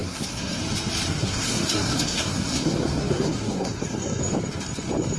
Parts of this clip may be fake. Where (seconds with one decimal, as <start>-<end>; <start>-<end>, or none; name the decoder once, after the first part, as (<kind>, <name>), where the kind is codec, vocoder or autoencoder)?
0.0-0.6 (codec, SNAC); 1.1-4.2